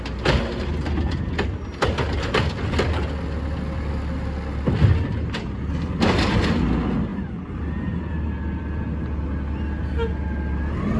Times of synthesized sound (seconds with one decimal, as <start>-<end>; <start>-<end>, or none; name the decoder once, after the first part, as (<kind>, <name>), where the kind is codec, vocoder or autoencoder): none